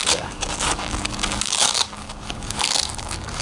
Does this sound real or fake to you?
fake